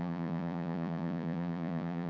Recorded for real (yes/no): no